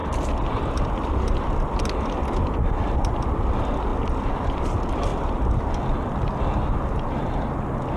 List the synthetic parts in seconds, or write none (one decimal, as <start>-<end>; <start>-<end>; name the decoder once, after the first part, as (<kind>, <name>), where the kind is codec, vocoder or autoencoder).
0.0-1.8 (vocoder, BigVGAN v2); 3.9-4.4